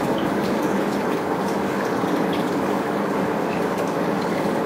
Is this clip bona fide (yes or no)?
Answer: no